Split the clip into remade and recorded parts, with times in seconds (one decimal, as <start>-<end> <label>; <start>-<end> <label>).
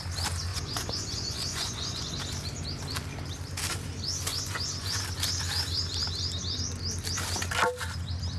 0.0-0.5 recorded; 0.5-2.2 remade; 2.2-4.3 recorded; 4.3-5.0 remade; 5.0-8.4 recorded